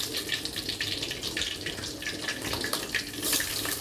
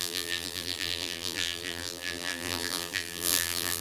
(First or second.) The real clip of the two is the first